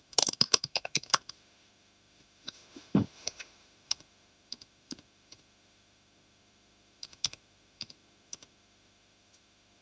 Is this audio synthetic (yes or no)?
yes